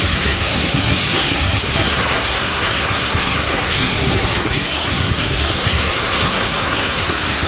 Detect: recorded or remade remade